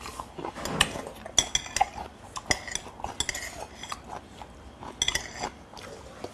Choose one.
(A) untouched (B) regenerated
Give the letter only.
A